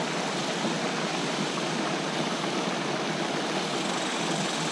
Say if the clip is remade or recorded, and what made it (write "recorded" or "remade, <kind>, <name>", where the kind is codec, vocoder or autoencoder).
recorded